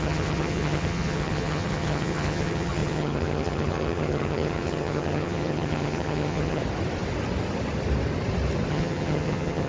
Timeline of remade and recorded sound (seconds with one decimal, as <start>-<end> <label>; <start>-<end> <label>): 0.0-6.6 remade; 6.6-8.7 recorded; 8.7-9.7 remade